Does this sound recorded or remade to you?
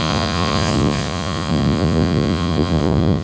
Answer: remade